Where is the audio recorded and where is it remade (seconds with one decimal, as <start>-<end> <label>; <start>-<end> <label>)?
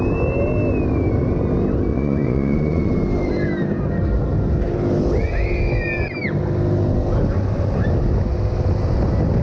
0.0-1.9 recorded; 1.9-2.9 remade; 2.9-9.4 recorded